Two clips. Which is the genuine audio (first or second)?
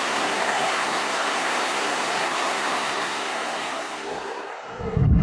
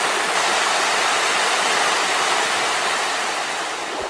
second